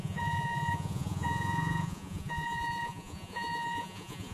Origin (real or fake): fake